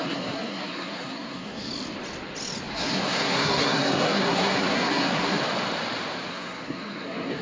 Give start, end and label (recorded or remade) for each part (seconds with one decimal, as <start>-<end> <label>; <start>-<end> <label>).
0.0-1.7 remade; 1.7-2.7 recorded; 2.7-5.4 remade; 5.4-6.3 recorded; 6.3-7.4 remade